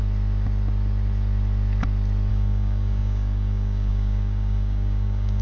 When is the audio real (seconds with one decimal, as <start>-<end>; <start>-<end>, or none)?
0.0-2.3